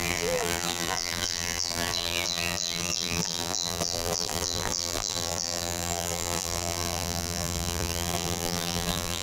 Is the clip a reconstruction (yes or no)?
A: yes